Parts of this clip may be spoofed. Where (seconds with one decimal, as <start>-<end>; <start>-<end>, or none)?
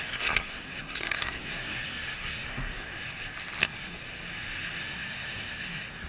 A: 0.0-2.9; 3.6-4.0; 4.8-6.1